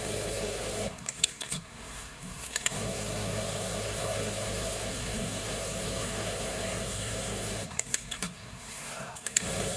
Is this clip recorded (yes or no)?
no